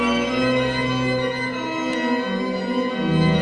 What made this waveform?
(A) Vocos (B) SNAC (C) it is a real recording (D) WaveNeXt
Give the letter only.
C